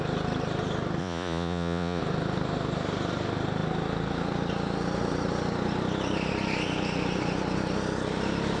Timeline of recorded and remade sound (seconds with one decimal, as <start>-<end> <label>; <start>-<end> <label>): 0.0-1.0 recorded; 1.0-2.0 remade; 2.0-8.6 recorded